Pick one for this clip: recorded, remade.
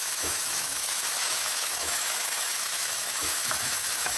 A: remade